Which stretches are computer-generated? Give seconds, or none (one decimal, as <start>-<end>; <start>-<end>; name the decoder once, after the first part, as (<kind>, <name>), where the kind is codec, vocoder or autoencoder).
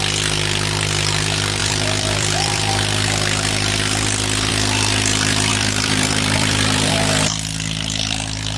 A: 1.6-4.5 (vocoder, BigVGAN v2); 5.5-6.9